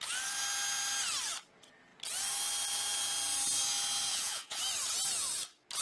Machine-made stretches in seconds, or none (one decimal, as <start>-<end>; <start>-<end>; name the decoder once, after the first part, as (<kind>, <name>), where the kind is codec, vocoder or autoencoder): 4.1-4.6 (vocoder, Vocos)